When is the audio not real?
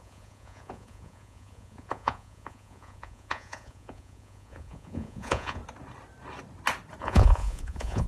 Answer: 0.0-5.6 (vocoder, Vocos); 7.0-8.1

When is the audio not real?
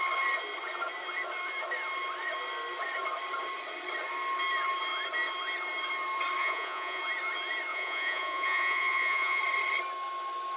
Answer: 6.4-7.0 (vocoder, Vocos); 7.7-9.4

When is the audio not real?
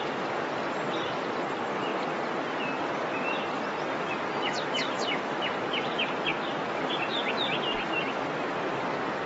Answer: none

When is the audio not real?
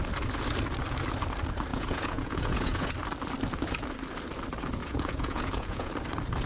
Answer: 1.7-2.9 (vocoder, Vocos); 4.8-5.9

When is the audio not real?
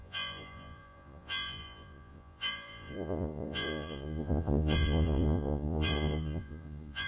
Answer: 0.0-7.1 (vocoder, Vocos)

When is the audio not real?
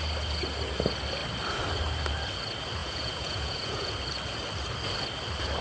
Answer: 2.8-3.9 (vocoder, Vocos)